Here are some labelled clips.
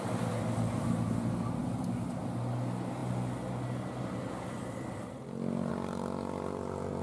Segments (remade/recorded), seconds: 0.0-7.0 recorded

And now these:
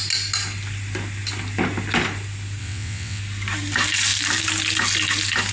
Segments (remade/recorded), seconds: 0.0-2.6 recorded; 2.6-3.2 remade; 3.2-5.5 recorded

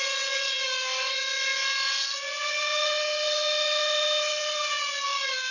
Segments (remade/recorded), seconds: 0.0-5.5 remade

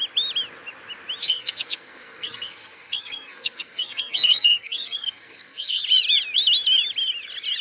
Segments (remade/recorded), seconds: 0.0-1.2 recorded; 1.2-5.8 remade; 5.8-7.6 recorded

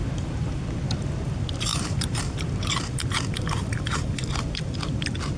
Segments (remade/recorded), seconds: 0.0-0.6 remade; 0.6-1.7 recorded; 1.7-4.3 remade; 4.3-5.4 recorded